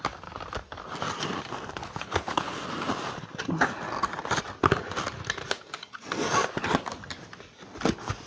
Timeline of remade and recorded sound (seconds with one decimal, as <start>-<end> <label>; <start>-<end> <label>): 0.0-1.8 recorded; 1.8-2.6 remade; 2.6-8.3 recorded